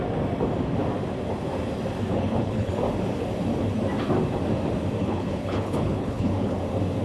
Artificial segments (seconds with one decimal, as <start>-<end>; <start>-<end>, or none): 2.1-2.7; 5.0-6.6